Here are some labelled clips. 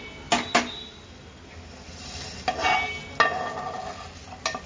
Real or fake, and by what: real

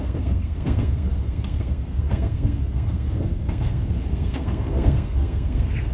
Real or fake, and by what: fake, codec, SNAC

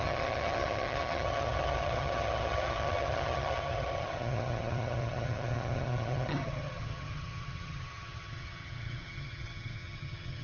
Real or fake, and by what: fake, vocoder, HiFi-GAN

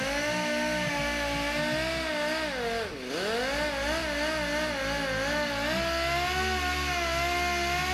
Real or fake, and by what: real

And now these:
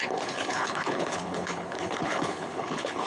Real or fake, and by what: fake, codec, HILCodec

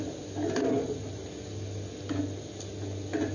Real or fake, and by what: real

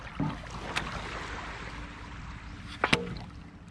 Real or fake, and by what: real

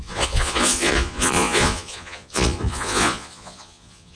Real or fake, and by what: fake, vocoder, Vocos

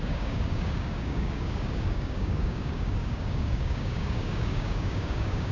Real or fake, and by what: fake, codec, DAC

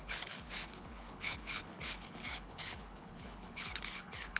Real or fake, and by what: fake, codec, HILCodec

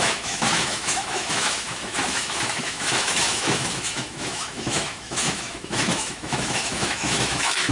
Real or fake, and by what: fake, autoencoder, DAC-VAE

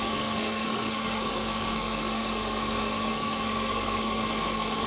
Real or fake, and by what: fake, codec, SNAC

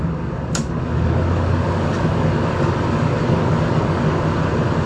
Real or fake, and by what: fake, codec, DAC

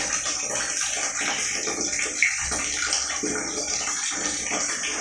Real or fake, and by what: real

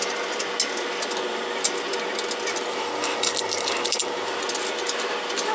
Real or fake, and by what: real